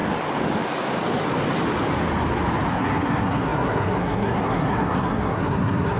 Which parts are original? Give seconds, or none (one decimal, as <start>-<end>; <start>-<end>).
0.0-2.7